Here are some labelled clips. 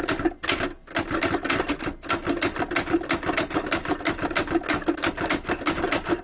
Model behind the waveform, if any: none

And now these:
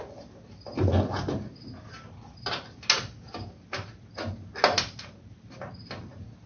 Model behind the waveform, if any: none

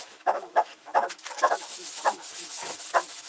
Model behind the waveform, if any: autoencoder, DAC-VAE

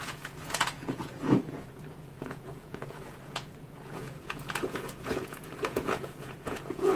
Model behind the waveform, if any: vocoder, Vocos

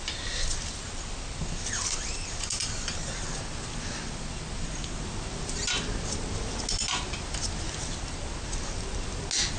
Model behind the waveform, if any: none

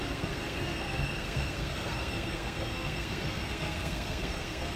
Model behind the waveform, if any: codec, SNAC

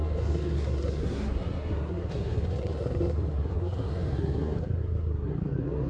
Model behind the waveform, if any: codec, SNAC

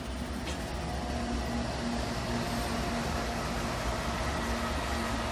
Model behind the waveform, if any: none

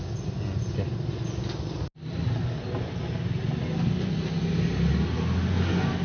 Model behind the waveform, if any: none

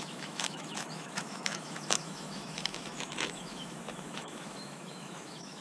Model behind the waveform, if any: autoencoder, DAC-VAE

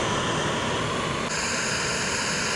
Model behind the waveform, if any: none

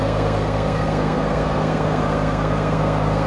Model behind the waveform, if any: codec, SNAC